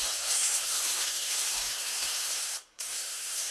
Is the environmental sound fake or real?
fake